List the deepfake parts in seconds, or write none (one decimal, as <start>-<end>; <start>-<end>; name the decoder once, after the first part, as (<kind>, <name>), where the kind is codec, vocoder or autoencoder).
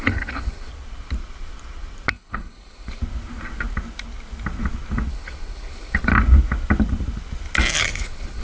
0.0-0.7 (codec, HILCodec); 2.1-3.0; 5.1-6.1; 7.8-8.4